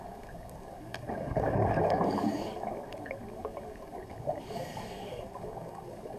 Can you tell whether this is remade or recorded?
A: remade